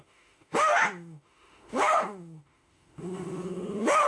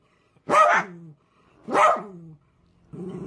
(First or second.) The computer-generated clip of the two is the first